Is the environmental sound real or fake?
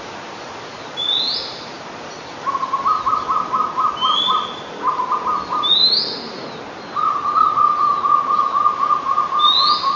real